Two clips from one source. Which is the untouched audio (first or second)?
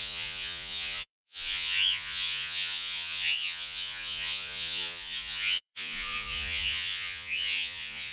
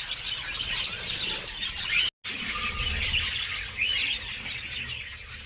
second